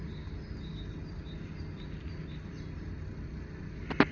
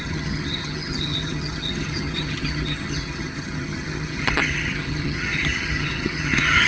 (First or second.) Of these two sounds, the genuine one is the first